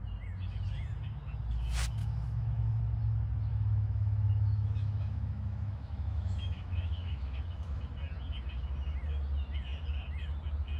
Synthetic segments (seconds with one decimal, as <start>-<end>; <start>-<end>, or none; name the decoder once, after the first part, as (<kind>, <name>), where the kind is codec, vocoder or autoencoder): 2.0-2.8 (autoencoder, DAC-VAE); 3.5-7.8